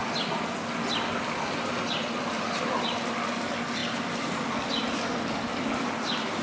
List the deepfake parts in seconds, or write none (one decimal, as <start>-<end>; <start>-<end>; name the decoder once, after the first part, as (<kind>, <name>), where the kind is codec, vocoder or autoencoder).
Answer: none